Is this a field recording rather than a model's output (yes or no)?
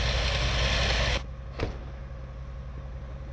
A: yes